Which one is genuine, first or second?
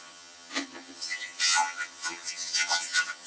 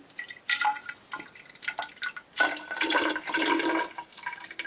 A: second